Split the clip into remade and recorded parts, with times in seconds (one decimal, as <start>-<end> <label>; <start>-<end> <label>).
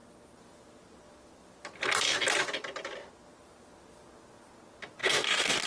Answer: 0.0-5.0 recorded; 5.0-5.7 remade